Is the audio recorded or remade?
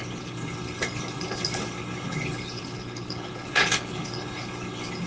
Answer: remade